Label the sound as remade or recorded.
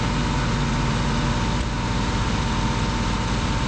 recorded